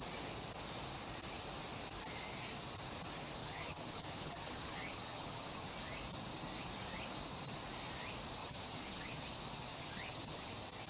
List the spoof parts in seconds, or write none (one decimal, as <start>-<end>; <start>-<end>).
3.4-5.7; 8.4-9.2; 9.7-10.5